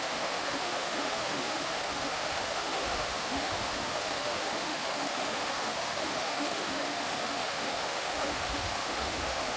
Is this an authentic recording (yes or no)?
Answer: no